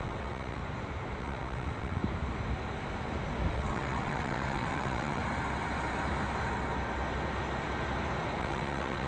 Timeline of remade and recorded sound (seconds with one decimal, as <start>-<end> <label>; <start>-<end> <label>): 0.0-0.6 remade; 0.6-1.2 recorded; 1.2-2.0 remade; 2.0-3.5 recorded; 3.5-5.2 remade; 5.2-8.4 recorded; 8.4-9.1 remade